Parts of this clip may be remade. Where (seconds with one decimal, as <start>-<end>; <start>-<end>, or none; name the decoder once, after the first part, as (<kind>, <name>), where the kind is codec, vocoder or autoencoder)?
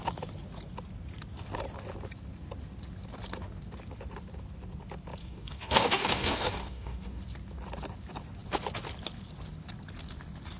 5.2-7.2 (codec, DAC)